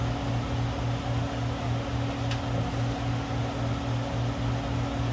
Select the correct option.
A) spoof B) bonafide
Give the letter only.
B